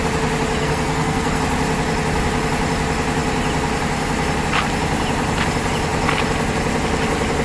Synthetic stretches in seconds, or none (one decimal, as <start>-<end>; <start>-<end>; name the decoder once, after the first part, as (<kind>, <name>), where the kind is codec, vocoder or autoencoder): 0.6-1.4 (codec, SNAC)